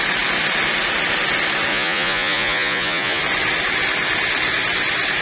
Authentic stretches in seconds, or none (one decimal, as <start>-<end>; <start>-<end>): 0.0-1.7; 3.2-5.2